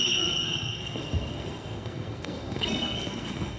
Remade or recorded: remade